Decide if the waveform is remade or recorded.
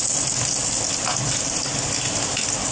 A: recorded